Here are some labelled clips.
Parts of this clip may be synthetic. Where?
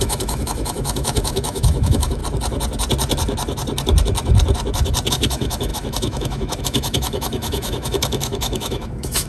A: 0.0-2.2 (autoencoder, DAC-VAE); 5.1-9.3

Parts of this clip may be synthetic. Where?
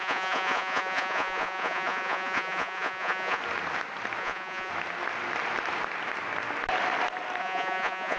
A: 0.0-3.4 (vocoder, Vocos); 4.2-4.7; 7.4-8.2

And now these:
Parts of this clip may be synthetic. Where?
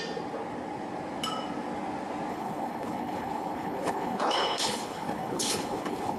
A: 2.3-6.2 (codec, HILCodec)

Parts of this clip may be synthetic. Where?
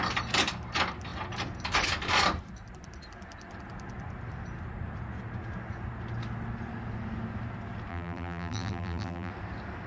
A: 7.9-9.3 (vocoder, BigVGAN v2)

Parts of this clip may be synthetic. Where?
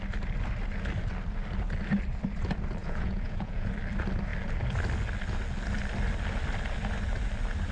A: 2.8-3.7 (vocoder, Vocos)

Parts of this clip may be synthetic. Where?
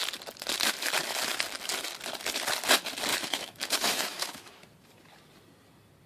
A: 3.1-4.5 (autoencoder, DAC-VAE)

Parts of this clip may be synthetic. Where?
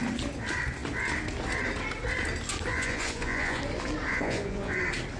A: 2.7-3.6 (vocoder, Vocos); 4.1-4.8